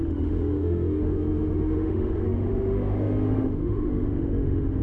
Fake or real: fake